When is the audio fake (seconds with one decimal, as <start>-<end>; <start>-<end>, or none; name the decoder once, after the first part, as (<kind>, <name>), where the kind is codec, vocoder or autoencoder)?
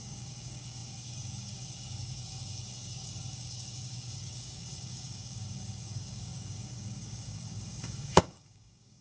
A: 0.0-9.0 (codec, DAC)